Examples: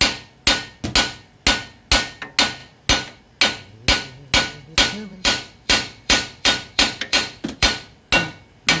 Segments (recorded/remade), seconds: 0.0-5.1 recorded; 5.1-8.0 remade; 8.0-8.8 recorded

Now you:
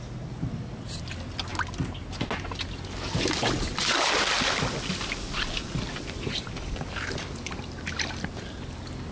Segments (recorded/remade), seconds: 0.0-9.1 recorded

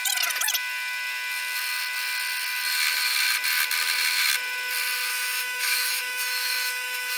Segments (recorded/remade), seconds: 0.0-5.1 recorded; 5.1-7.2 remade

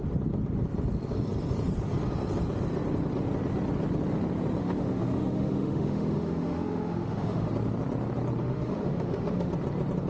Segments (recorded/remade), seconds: 0.0-4.6 recorded; 4.6-7.5 remade; 7.5-8.4 recorded; 8.4-9.5 remade; 9.5-10.1 recorded